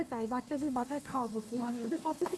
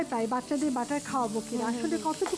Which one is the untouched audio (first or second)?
second